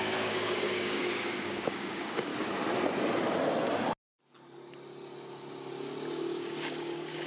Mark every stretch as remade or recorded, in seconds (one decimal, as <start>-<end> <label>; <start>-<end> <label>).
0.0-2.3 remade; 2.3-6.1 recorded; 6.1-7.3 remade